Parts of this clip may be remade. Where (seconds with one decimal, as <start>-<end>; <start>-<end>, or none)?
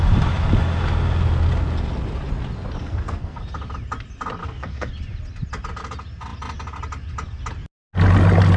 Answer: 2.8-3.4; 4.4-4.9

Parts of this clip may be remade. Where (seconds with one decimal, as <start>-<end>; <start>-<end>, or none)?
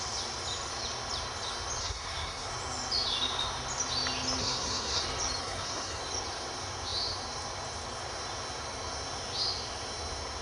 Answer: 1.8-2.5; 4.4-5.0; 5.4-6.0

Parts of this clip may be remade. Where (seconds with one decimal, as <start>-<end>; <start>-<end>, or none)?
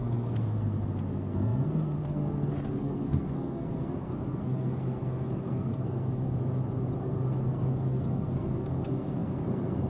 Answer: 0.0-6.4; 7.0-9.9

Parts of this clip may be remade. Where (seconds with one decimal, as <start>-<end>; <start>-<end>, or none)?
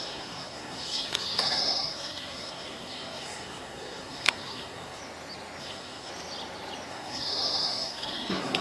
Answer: 0.0-5.0; 5.6-6.1; 6.9-8.6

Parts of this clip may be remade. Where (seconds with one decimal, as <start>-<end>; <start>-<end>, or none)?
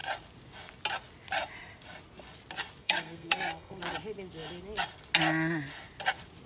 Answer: 2.8-3.8